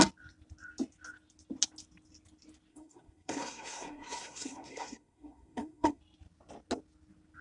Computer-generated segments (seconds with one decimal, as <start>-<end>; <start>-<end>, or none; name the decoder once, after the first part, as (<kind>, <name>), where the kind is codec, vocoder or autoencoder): 2.7-6.0 (codec, SNAC)